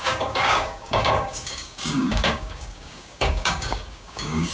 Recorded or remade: remade